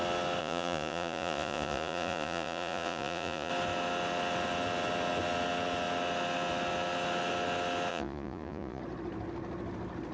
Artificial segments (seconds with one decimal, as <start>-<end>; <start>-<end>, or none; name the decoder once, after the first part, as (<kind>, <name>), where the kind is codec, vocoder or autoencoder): 0.4-3.5 (vocoder, Vocos); 7.9-8.8